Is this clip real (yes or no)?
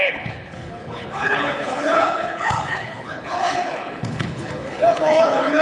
no